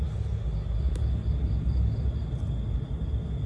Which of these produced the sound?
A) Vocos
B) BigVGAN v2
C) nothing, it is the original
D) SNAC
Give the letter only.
C